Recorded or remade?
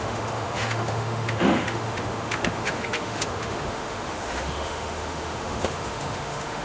remade